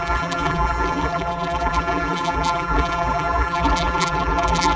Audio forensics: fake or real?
fake